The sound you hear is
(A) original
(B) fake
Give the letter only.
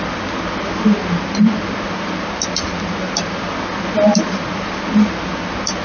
A